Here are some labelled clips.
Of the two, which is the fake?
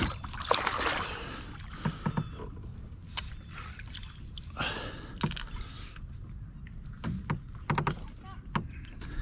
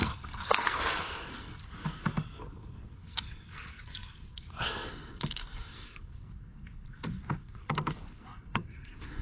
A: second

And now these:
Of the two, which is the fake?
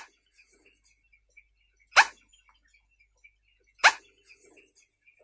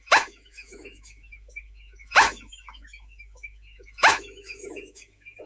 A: second